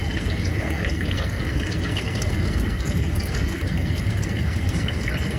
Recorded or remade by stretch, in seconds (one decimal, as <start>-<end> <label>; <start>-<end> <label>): 0.0-5.4 remade